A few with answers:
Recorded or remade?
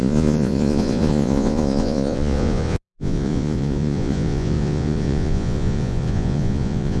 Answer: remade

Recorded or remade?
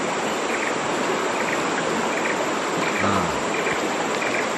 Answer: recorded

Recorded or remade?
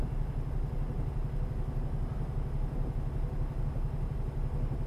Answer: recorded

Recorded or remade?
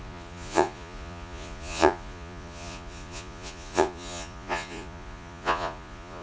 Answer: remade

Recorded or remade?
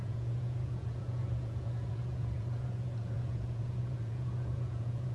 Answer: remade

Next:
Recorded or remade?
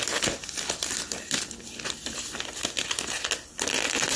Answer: recorded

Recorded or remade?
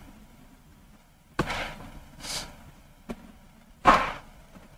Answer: recorded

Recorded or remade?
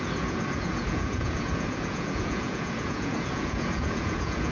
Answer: remade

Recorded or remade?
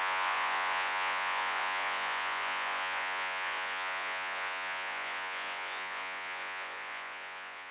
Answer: remade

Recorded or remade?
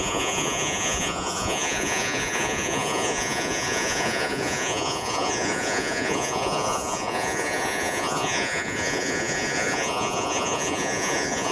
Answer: remade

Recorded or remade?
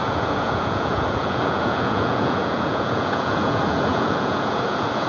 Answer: remade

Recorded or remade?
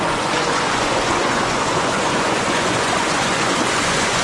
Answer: remade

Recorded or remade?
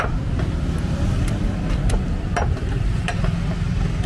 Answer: recorded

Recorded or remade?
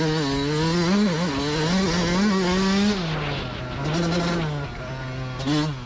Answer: recorded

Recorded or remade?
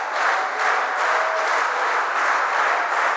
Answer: recorded